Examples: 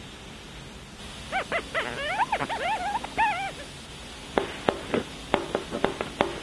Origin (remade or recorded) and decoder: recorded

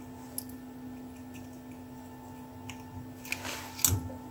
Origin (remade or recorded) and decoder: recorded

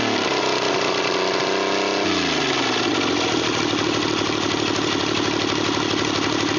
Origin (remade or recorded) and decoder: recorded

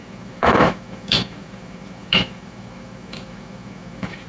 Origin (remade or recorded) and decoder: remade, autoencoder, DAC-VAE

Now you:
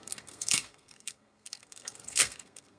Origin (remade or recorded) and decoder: remade, codec, SNAC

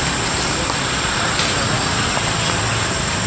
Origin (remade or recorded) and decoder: recorded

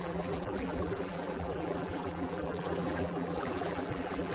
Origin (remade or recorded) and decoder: remade, vocoder, BigVGAN v2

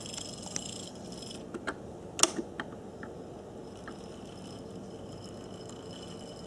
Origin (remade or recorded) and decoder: recorded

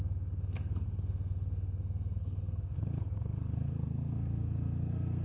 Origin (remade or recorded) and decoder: remade, codec, SNAC